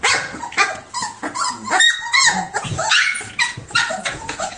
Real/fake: fake